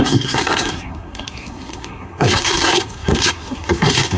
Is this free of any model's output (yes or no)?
no